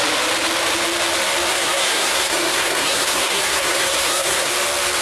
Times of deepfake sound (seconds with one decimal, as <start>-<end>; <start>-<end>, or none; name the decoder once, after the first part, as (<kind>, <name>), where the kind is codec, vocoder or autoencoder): 1.5-4.5 (codec, SNAC)